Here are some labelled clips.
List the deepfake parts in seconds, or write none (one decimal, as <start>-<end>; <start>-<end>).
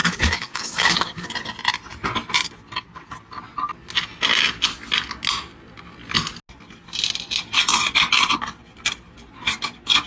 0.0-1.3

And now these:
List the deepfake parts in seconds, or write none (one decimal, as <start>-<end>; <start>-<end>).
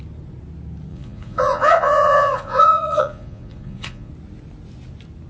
0.9-4.1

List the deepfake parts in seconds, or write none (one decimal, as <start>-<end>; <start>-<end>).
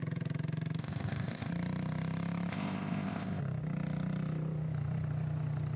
0.8-1.5; 2.5-3.4